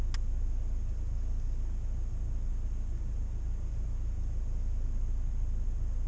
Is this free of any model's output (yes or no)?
yes